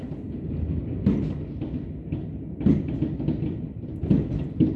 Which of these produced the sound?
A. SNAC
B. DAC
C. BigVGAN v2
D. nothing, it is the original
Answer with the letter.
D